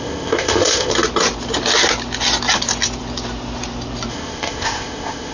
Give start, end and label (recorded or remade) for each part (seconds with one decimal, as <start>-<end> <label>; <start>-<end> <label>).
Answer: 0.0-0.9 remade; 0.9-4.1 recorded; 4.1-5.3 remade